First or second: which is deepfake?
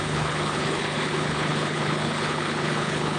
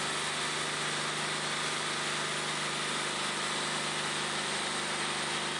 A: first